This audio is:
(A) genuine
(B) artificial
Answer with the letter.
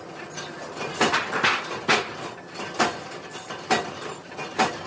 A